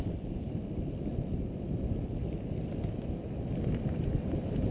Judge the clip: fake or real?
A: real